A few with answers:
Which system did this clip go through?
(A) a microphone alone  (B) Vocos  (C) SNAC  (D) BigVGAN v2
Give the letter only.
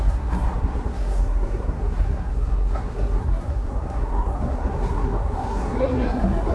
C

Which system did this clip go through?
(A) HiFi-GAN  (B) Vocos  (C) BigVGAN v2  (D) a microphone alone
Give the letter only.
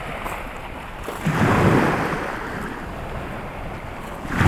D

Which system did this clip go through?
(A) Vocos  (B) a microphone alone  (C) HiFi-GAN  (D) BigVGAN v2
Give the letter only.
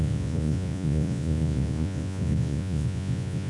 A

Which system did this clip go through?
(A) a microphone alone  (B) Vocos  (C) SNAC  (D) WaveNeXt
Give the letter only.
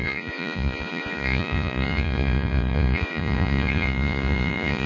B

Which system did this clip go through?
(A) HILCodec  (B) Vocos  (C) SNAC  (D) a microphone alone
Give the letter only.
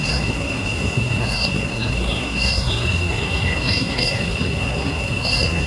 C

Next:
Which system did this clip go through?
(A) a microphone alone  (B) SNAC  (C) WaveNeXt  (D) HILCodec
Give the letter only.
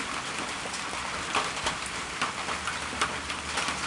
A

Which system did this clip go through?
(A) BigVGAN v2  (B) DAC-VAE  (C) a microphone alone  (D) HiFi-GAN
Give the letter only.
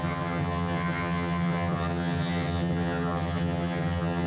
D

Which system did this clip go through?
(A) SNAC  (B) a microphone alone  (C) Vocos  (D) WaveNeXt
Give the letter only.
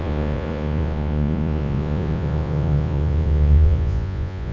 C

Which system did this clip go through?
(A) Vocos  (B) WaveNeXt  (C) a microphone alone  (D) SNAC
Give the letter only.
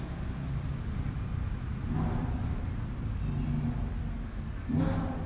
C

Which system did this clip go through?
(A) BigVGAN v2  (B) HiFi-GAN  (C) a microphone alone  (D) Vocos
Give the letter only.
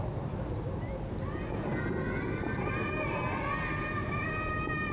C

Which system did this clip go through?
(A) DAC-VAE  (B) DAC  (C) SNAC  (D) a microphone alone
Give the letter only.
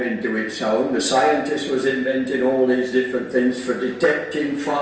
D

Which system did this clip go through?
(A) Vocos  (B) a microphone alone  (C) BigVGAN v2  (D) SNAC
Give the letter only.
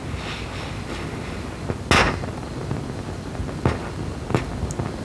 B